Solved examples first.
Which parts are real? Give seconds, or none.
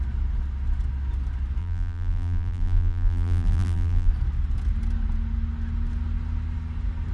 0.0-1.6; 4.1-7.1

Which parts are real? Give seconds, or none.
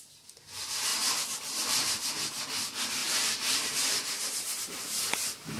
0.0-0.9; 2.1-3.0; 4.8-5.6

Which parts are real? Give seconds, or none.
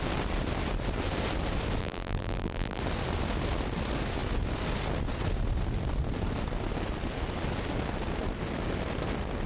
0.0-1.8; 2.8-9.5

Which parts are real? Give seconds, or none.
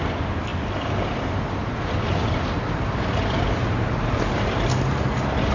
0.0-0.5; 3.0-3.6; 5.1-5.5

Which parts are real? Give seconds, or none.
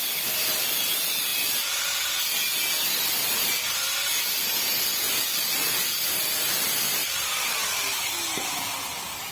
0.0-9.3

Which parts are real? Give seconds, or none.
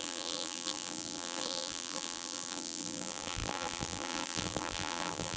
none